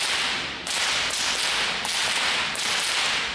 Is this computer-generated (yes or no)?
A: no